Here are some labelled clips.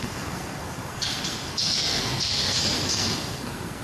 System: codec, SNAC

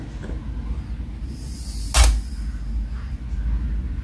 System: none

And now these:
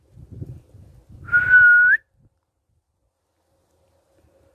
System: none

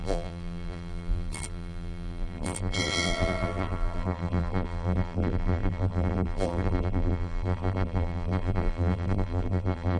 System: vocoder, BigVGAN v2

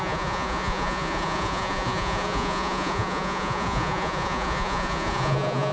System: vocoder, Vocos